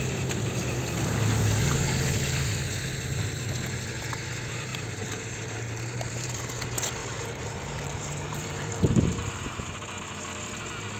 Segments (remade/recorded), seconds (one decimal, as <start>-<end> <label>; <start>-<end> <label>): 0.0-4.7 recorded; 4.7-6.3 remade; 6.3-7.0 recorded; 7.0-9.7 remade; 9.7-11.0 recorded